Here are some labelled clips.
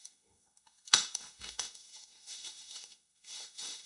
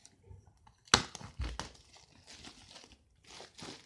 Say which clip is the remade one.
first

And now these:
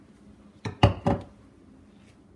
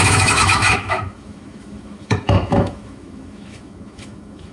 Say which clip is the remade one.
second